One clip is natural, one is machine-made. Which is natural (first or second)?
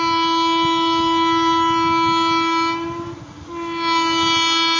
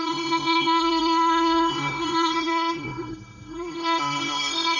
first